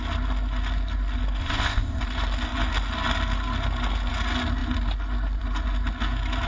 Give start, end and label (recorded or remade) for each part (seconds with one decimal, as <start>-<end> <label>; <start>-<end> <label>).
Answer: 0.0-1.4 recorded; 1.4-2.0 remade; 2.0-6.5 recorded